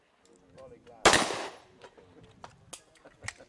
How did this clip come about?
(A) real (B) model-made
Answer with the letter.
A